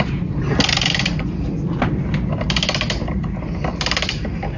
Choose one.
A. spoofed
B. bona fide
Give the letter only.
B